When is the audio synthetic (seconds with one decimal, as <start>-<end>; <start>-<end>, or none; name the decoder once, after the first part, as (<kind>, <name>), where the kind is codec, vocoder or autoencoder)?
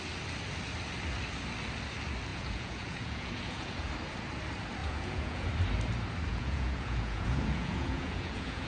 2.3-3.9 (vocoder, Vocos); 4.8-5.5; 6.3-8.7